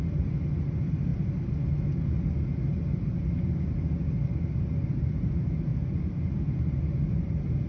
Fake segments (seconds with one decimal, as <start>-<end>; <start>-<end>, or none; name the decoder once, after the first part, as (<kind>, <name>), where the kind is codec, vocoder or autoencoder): 0.0-1.1 (vocoder, BigVGAN v2); 4.0-5.7; 6.8-7.7